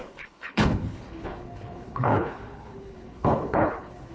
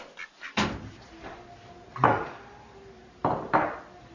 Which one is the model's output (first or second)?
first